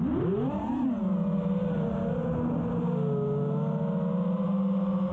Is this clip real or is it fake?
real